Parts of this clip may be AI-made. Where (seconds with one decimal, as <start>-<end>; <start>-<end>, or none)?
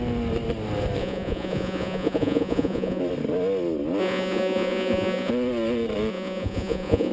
1.0-3.0; 4.0-5.3; 6.1-7.1